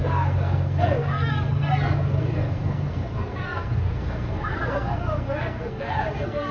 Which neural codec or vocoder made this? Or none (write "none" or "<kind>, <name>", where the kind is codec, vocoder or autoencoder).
codec, SNAC